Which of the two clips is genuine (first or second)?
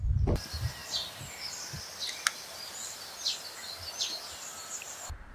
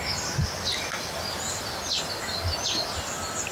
second